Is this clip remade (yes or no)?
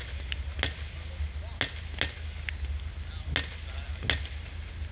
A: no